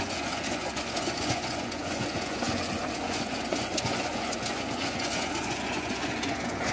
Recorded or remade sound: remade